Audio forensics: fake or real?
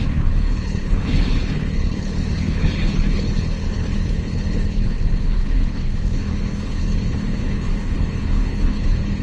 fake